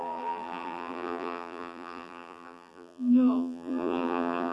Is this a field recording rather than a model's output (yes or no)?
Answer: no